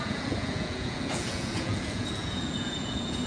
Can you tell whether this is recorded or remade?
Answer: remade